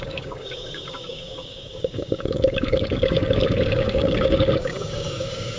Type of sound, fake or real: fake